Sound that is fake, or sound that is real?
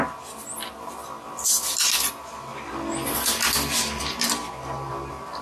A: real